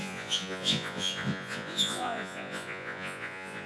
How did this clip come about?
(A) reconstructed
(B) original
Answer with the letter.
A